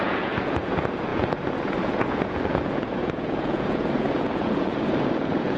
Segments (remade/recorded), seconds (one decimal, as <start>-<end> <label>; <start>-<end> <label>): 0.0-5.6 remade